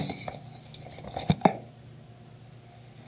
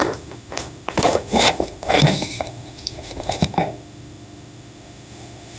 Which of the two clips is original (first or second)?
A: first